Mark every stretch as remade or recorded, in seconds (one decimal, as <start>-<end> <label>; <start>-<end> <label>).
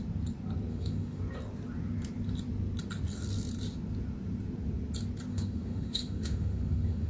0.0-0.7 recorded; 0.7-1.2 remade; 1.2-5.3 recorded; 5.3-7.1 remade